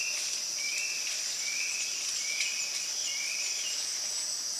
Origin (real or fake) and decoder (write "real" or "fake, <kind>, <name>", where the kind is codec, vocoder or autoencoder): real